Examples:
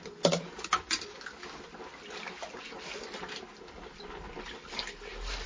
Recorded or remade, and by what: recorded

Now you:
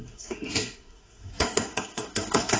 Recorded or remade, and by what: remade, codec, SNAC